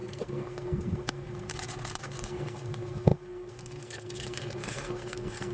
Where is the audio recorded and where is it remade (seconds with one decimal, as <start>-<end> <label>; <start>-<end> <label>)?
0.0-1.5 remade; 1.5-2.0 recorded; 2.0-5.5 remade